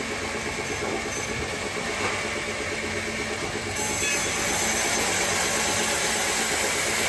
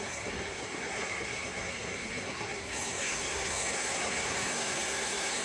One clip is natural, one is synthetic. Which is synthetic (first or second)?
second